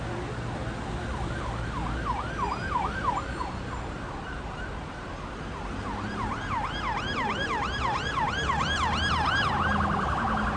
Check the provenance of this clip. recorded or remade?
recorded